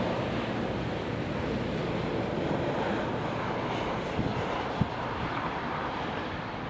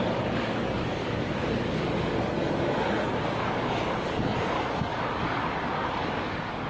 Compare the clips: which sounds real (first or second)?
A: first